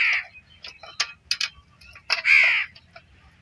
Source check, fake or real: real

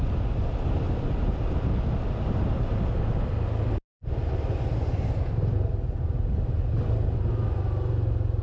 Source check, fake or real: real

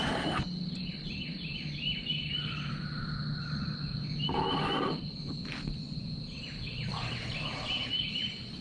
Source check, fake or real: real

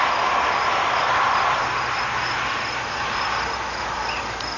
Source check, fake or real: real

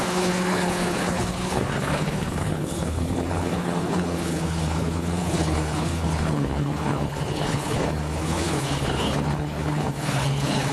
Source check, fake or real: fake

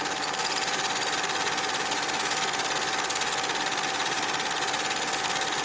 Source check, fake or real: real